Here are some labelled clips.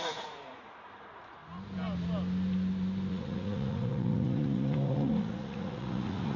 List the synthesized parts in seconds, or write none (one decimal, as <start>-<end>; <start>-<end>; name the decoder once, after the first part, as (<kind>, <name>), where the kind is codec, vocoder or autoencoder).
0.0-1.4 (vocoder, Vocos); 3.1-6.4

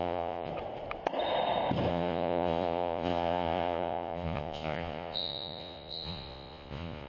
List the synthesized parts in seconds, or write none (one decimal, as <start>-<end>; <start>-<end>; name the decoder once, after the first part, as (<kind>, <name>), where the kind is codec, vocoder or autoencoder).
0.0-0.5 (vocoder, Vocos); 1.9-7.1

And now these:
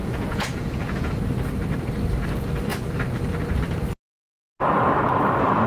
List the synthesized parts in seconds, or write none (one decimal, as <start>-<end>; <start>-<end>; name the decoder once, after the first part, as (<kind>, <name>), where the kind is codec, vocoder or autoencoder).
0.0-1.1 (vocoder, Vocos)